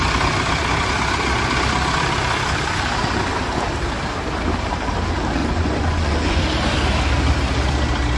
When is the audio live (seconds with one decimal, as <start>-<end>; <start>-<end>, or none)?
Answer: 0.0-5.4; 6.4-8.2